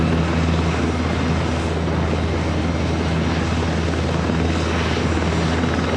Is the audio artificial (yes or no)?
no